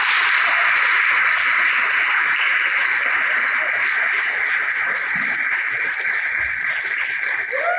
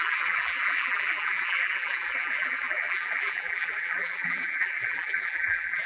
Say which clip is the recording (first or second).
first